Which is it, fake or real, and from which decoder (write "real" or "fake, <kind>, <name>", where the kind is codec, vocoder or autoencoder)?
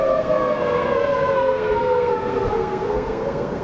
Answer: fake, codec, SNAC